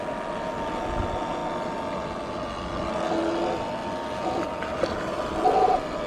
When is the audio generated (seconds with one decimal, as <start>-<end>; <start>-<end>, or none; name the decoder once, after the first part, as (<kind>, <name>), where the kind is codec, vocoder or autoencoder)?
none